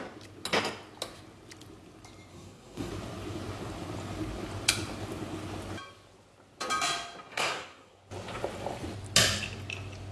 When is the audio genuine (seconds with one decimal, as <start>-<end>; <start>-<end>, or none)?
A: 0.0-2.3; 2.9-7.3; 8.0-10.1